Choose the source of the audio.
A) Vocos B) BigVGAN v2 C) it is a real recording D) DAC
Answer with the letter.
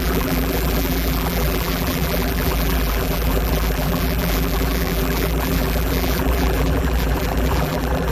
B